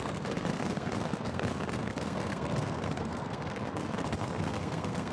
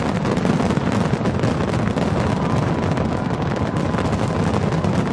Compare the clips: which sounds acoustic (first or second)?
second